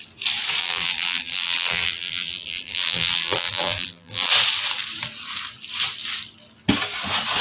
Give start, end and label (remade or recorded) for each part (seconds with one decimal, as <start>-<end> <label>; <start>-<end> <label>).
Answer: 0.0-0.6 recorded; 0.6-4.3 remade; 4.3-7.4 recorded